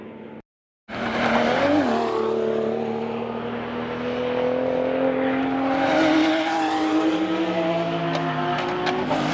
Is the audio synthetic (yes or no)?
no